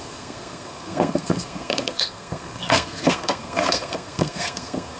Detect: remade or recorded remade